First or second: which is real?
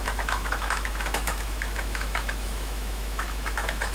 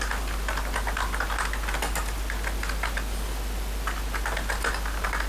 second